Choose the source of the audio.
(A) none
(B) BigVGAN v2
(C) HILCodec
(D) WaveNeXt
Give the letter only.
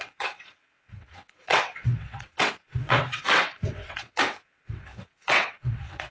D